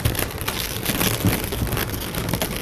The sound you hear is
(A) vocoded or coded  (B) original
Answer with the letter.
A